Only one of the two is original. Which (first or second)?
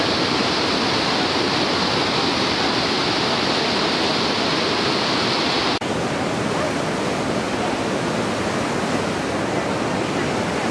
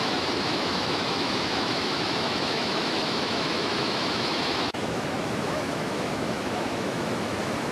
first